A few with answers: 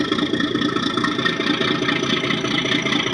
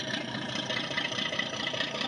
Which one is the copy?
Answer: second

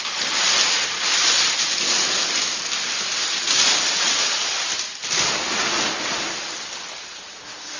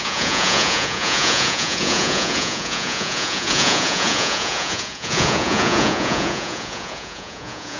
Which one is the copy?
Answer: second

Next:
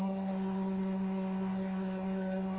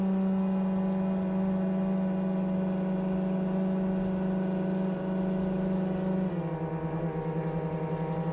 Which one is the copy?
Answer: first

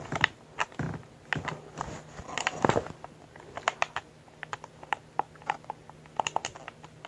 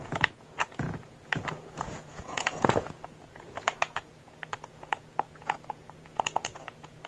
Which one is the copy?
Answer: second